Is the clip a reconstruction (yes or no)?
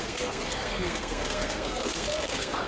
yes